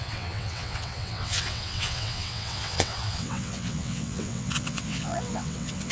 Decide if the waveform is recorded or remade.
remade